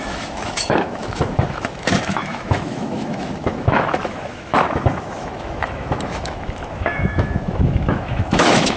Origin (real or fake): fake